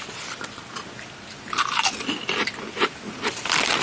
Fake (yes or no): no